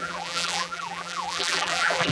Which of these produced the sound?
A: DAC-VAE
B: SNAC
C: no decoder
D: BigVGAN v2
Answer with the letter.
D